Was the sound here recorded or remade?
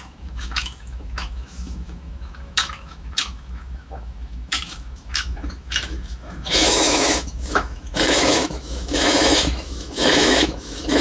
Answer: remade